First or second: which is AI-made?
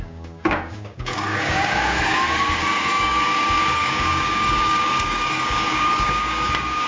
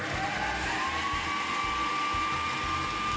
first